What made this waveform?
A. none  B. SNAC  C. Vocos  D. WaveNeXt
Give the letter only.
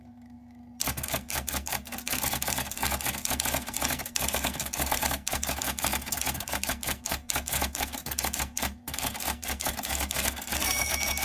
B